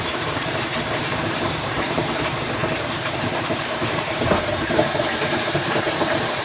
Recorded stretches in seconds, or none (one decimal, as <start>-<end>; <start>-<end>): none